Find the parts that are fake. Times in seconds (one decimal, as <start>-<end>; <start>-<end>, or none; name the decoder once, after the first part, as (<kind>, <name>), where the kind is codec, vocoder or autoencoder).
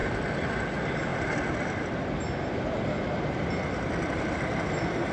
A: none